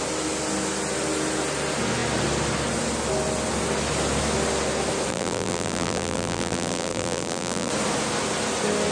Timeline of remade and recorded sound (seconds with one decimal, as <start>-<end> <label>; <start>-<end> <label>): 0.0-5.1 recorded; 5.1-7.7 remade; 7.7-8.9 recorded